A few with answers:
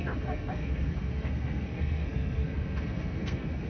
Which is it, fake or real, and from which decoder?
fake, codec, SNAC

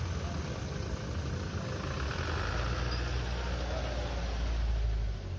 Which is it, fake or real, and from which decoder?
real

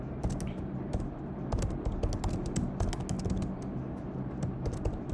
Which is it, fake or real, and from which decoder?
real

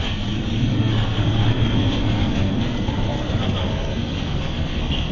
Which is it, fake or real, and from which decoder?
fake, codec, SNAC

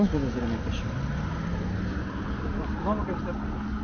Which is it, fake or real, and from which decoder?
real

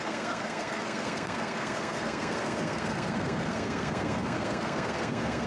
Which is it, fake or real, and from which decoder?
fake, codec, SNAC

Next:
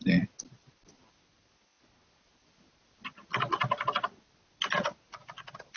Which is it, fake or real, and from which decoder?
real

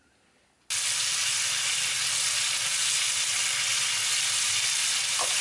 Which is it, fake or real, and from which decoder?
real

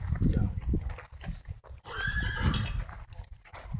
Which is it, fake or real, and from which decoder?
real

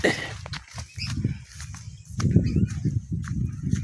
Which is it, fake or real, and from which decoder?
real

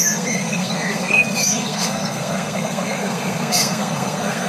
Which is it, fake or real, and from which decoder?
fake, codec, SNAC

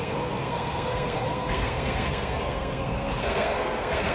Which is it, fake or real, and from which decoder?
fake, codec, SNAC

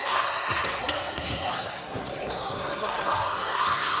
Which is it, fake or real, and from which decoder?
fake, codec, SNAC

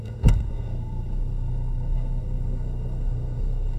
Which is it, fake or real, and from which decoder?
fake, codec, SNAC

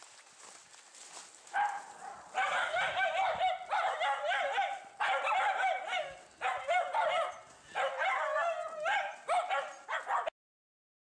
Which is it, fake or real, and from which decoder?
real